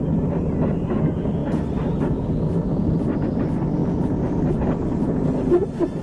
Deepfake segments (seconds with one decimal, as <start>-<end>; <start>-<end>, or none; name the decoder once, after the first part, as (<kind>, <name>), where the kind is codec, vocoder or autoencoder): none